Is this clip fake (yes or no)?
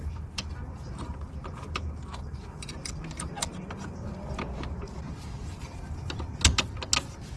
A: no